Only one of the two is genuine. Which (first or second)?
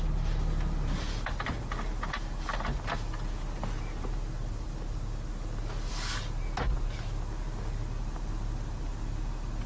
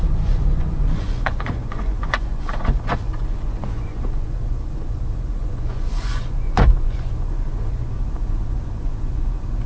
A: first